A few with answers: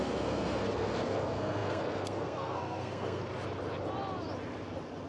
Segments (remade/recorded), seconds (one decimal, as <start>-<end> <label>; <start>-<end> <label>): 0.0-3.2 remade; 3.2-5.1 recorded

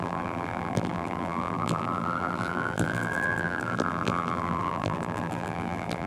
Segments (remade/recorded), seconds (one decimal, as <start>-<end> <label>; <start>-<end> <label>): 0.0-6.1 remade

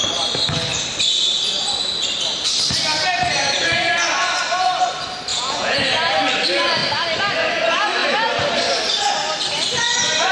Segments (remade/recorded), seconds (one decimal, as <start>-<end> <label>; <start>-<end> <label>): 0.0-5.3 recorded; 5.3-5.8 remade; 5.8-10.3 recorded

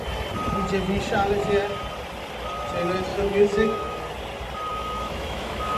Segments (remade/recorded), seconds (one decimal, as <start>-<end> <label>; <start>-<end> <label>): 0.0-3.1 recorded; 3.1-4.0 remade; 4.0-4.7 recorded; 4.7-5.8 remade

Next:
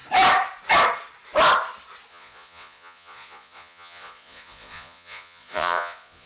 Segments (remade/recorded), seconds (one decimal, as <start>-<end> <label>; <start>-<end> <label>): 0.0-2.1 recorded; 2.1-6.3 remade

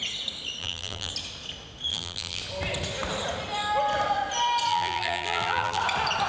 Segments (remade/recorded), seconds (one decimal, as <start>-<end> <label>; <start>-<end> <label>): 0.0-0.6 recorded; 0.6-1.1 remade; 1.1-1.9 recorded; 1.9-2.4 remade; 2.4-4.7 recorded; 4.7-5.8 remade; 5.8-6.3 recorded

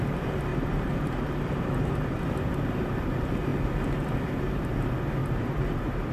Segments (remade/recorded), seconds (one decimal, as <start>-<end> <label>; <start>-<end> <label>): 0.0-0.5 recorded; 0.5-2.2 remade; 2.2-5.2 recorded; 5.2-6.1 remade